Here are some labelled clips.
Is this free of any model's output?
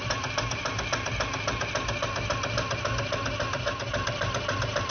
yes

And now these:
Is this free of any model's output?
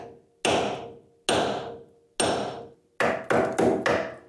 yes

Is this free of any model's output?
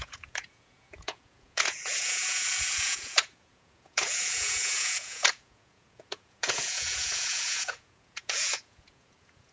no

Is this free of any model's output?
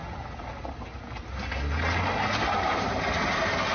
yes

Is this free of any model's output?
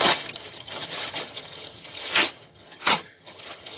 no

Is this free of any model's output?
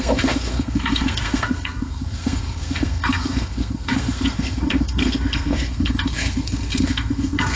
no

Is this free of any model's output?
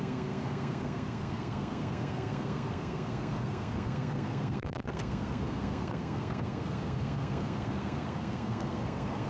no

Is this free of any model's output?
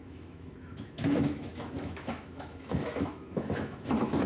no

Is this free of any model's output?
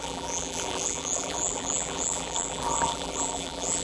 no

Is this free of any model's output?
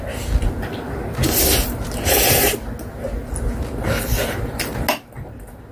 yes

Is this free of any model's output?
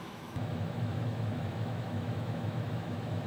no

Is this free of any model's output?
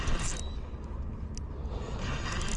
yes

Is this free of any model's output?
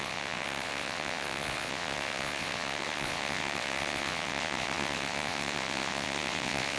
no